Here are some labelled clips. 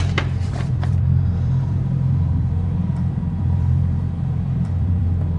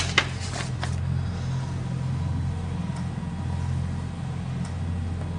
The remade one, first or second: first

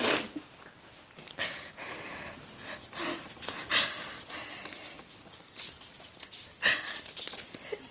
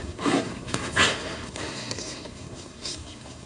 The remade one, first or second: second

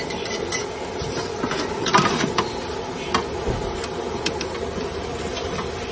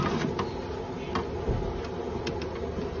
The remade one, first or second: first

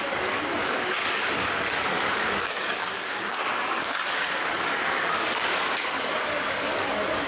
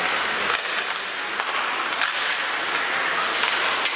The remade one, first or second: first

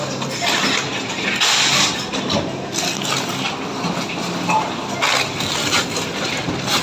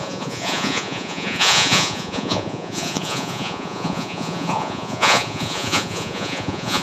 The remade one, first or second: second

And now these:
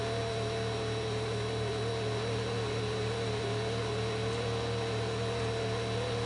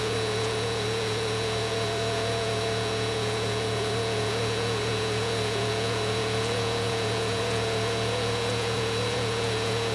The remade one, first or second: second